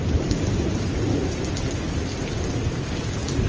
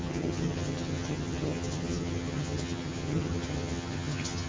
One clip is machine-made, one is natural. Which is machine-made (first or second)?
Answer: second